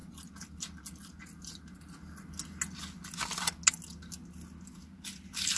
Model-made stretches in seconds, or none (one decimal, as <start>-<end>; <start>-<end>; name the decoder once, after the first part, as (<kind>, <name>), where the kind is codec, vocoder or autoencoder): none

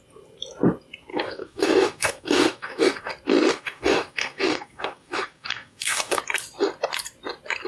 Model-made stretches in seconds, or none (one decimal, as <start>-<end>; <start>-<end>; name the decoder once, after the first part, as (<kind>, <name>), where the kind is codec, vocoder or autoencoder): 1.1-3.1 (codec, DAC); 3.5-6.2